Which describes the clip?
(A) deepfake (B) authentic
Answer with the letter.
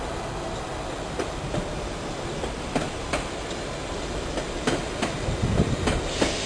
B